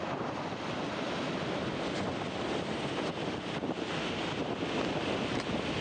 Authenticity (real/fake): fake